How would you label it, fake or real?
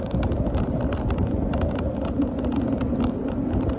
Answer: real